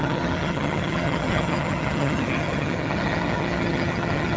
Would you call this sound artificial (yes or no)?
yes